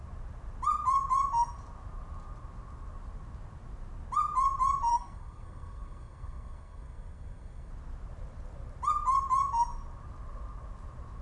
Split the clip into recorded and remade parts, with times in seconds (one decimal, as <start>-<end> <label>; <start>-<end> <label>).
0.0-4.9 recorded; 4.9-7.7 remade; 7.7-11.2 recorded